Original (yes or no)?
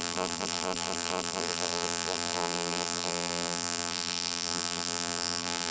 no